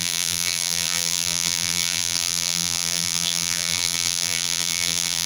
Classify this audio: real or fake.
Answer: fake